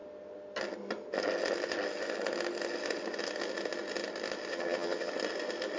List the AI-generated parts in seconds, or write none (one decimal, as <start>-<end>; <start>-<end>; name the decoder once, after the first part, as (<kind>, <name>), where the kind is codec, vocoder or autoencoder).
4.5-5.1 (vocoder, HiFi-GAN)